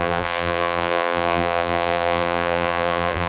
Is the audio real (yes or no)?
no